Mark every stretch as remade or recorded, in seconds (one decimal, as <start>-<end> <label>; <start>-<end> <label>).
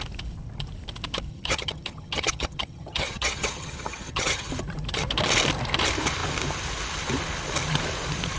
0.0-1.3 recorded; 1.3-4.5 remade; 4.5-8.4 recorded